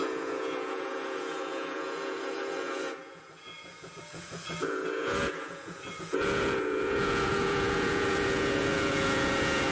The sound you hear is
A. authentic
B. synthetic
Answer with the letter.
B